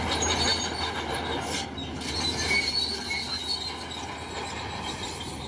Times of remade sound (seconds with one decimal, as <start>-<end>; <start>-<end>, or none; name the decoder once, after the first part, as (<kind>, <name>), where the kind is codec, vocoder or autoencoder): 0.0-3.4 (vocoder, BigVGAN v2); 4.7-5.5